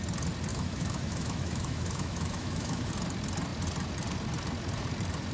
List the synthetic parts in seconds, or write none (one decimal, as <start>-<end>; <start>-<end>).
0.5-2.9